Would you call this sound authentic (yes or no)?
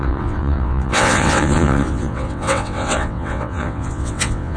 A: no